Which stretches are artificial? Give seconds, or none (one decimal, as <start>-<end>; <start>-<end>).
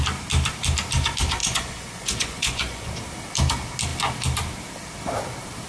1.4-2.9